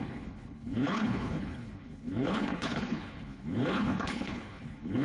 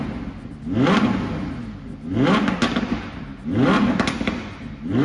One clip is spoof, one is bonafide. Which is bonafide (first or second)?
second